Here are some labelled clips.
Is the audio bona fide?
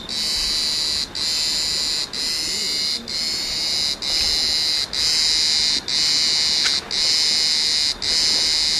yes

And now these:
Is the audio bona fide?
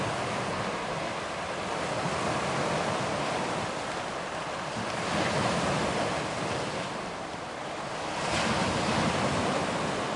yes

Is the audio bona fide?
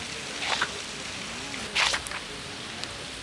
yes